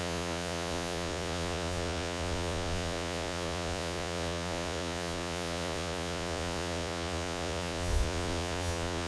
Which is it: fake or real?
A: fake